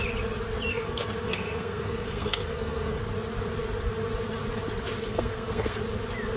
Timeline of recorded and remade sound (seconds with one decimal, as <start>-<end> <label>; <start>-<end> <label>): 0.0-0.7 recorded; 0.7-3.0 remade; 3.0-5.0 recorded; 5.0-5.8 remade; 5.8-6.4 recorded